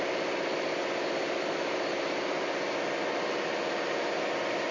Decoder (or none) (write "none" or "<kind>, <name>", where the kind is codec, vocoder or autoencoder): none